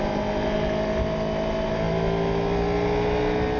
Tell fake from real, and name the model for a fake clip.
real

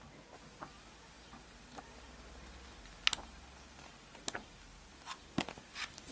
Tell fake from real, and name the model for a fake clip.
real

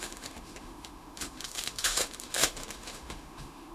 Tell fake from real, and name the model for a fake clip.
fake, autoencoder, DAC-VAE